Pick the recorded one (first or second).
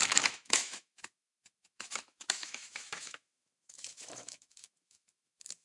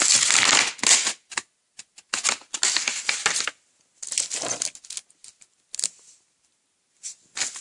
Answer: second